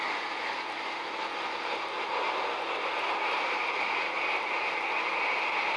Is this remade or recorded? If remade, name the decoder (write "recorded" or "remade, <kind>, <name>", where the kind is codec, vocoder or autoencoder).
recorded